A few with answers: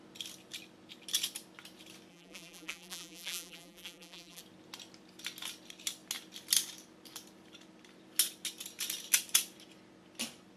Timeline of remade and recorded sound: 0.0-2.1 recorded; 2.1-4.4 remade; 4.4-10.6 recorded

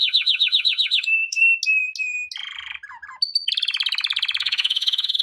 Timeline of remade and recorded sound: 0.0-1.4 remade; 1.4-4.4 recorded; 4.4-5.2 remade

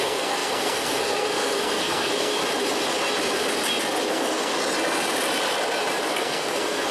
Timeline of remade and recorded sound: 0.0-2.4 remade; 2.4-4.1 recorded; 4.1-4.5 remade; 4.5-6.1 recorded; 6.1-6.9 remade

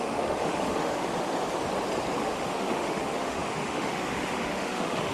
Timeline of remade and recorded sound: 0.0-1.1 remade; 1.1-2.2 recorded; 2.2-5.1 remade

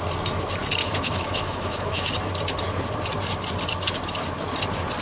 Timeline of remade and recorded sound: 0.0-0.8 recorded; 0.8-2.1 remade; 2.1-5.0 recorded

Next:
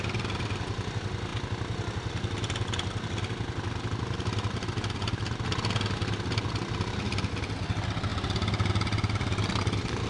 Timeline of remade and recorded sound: 0.0-10.1 recorded

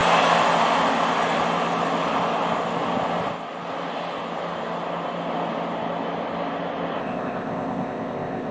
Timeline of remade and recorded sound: 0.0-7.0 recorded; 7.0-8.5 remade